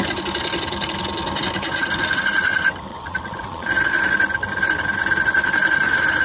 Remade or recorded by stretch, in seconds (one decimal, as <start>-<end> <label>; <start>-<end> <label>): 0.0-2.9 recorded; 2.9-4.0 remade; 4.0-6.2 recorded